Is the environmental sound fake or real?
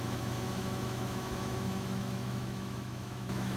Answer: fake